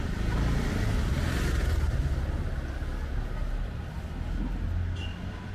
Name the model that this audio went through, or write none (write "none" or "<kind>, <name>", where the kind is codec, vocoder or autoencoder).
none